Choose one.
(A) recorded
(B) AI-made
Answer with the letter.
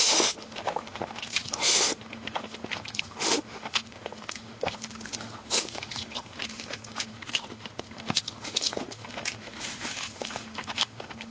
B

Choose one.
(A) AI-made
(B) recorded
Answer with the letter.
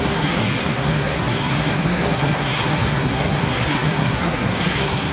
A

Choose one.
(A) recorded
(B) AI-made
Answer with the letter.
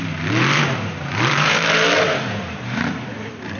B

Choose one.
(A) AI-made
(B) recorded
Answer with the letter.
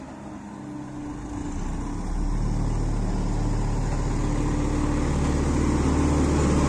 B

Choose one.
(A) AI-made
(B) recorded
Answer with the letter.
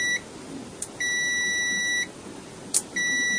B